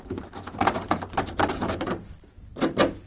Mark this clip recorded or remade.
remade